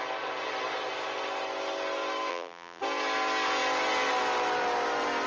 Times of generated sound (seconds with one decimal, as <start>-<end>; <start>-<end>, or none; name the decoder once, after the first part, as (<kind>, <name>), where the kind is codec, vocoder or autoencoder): 2.3-2.8 (vocoder, BigVGAN v2)